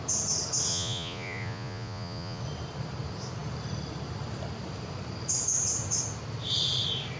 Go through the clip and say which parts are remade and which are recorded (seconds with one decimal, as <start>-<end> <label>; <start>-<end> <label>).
0.0-0.7 recorded; 0.7-2.4 remade; 2.4-7.2 recorded